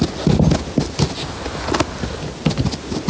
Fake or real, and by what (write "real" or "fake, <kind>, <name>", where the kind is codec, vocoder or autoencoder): real